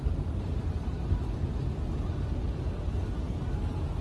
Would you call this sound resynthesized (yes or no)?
no